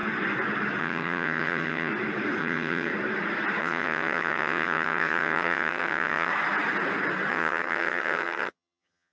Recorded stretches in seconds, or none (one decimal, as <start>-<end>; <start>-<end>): 0.0-0.8; 1.9-2.4; 2.9-3.6; 6.3-7.3